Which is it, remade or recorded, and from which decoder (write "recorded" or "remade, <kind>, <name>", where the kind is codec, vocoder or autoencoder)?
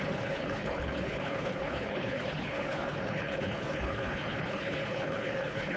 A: remade, codec, HILCodec